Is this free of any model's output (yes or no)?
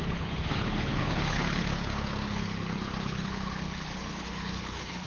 no